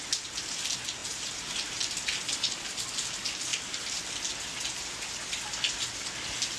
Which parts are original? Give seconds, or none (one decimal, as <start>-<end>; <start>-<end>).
0.0-1.0; 2.2-3.5; 4.0-6.6